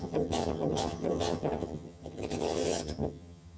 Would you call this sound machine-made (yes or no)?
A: yes